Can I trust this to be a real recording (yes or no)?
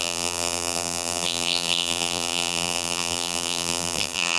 no